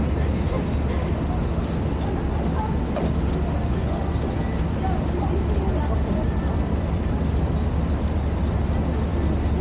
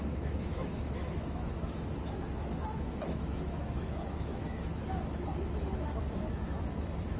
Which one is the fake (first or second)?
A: second